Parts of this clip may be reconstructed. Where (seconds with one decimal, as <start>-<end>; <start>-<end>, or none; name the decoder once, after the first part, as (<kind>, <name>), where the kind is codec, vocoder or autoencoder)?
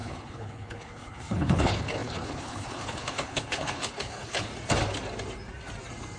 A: 0.0-4.5 (codec, HILCodec)